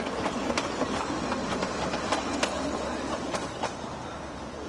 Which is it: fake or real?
real